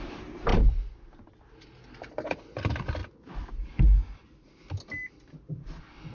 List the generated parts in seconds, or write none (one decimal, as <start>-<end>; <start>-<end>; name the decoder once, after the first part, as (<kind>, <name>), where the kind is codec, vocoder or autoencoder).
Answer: none